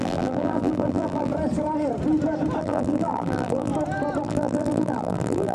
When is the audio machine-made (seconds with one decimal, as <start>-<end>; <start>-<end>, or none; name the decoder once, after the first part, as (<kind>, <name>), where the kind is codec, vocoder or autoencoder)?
0.0-1.3 (vocoder, BigVGAN v2); 2.6-3.7; 4.2-5.5